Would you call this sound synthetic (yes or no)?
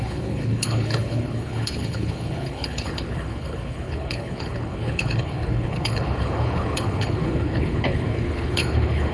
yes